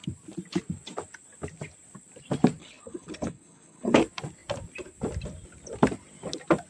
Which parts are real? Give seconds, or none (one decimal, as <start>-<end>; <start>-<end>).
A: 0.0-2.6; 4.0-6.7